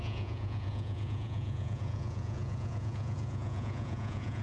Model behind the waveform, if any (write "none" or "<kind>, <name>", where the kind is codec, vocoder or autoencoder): vocoder, Vocos